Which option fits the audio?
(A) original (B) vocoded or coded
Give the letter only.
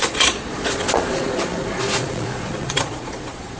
B